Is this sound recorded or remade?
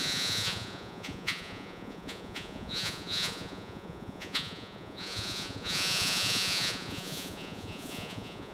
remade